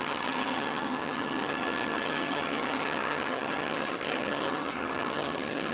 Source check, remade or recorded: remade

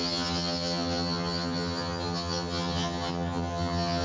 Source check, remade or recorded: remade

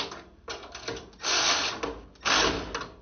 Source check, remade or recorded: recorded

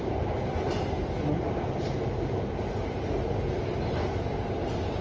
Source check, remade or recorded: recorded